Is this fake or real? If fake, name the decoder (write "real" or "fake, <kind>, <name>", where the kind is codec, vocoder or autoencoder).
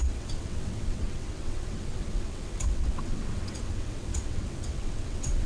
fake, vocoder, WaveNeXt